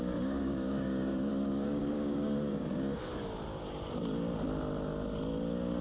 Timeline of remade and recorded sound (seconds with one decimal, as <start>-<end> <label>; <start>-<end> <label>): 0.0-3.1 remade; 3.1-5.8 recorded